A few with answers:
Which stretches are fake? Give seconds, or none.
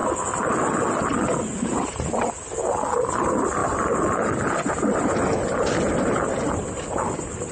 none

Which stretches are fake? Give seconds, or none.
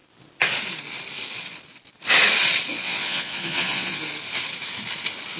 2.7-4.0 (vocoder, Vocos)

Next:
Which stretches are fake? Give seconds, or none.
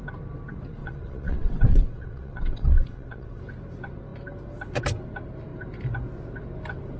0.8-3.4 (vocoder, WaveNeXt)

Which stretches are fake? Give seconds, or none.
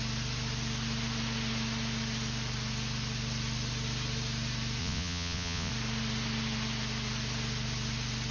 4.8-5.7 (vocoder, Vocos)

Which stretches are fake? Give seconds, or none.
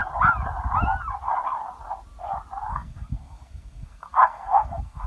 2.7-5.1 (codec, SNAC)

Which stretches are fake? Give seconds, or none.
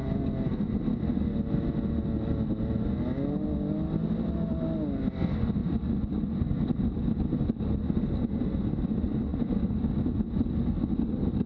none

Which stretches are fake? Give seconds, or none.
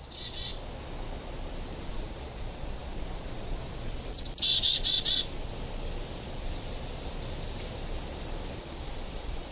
0.0-0.5 (vocoder, Vocos); 1.9-5.5; 8.6-9.5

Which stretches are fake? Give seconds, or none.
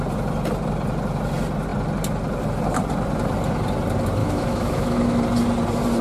4.2-5.2 (autoencoder, DAC-VAE)